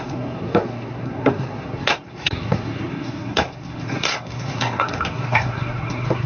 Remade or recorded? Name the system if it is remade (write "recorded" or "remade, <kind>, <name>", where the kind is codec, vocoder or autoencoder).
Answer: remade, codec, SNAC